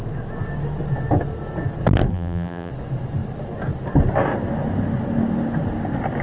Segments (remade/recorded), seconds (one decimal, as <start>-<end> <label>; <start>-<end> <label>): 0.0-2.1 recorded; 2.1-2.7 remade; 2.7-6.2 recorded